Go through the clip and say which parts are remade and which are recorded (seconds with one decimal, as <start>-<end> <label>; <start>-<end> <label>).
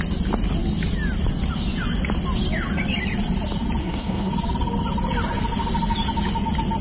0.0-3.8 recorded; 3.8-4.3 remade; 4.3-6.8 recorded